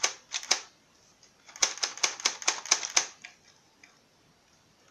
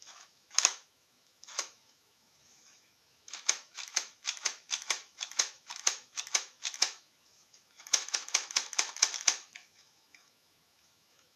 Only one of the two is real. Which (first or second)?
first